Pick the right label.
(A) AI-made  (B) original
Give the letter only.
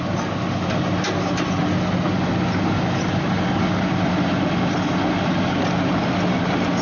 B